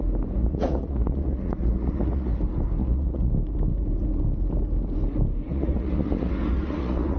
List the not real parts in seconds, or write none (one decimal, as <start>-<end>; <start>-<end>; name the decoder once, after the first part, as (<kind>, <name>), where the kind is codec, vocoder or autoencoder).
0.4-2.4 (vocoder, Vocos); 2.8-3.3; 5.5-7.2